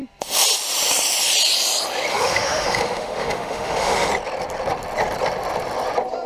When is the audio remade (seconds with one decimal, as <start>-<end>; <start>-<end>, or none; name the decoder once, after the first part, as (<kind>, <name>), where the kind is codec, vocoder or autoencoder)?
2.1-4.1 (autoencoder, DAC-VAE)

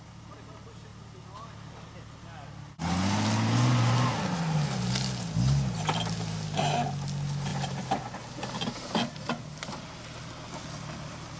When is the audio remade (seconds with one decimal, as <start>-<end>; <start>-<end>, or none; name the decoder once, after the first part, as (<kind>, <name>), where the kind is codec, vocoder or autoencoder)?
none

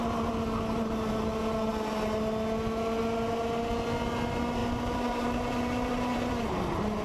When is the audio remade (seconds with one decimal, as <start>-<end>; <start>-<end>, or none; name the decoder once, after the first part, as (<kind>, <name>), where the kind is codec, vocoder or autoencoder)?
4.6-6.3 (vocoder, BigVGAN v2)